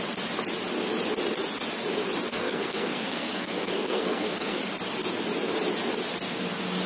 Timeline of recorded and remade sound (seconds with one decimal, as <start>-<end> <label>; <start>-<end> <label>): 0.0-2.3 recorded; 2.3-4.6 remade; 4.6-6.9 recorded